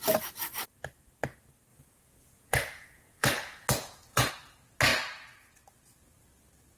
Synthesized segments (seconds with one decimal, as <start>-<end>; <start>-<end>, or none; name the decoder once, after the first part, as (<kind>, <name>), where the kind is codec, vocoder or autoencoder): 1.7-4.3 (vocoder, Vocos)